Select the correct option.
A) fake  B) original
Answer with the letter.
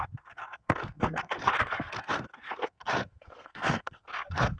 A